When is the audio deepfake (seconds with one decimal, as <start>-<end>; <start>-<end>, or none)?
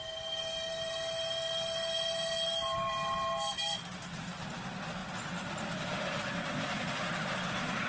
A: none